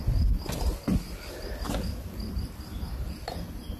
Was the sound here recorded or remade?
recorded